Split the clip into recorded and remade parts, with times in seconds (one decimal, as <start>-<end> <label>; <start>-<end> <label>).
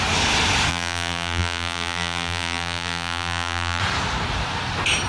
0.0-0.7 recorded; 0.7-3.8 remade; 3.8-5.1 recorded